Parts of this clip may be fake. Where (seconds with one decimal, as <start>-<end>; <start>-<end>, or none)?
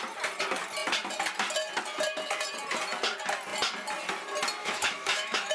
4.6-5.5